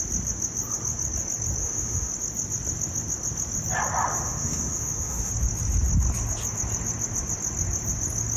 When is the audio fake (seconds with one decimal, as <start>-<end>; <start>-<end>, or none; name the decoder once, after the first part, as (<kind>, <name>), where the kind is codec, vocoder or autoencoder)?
1.6-2.1 (autoencoder, DAC-VAE); 4.1-5.3